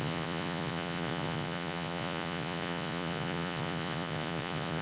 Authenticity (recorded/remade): remade